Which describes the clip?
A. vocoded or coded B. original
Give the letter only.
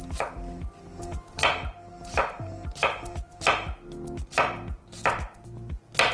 B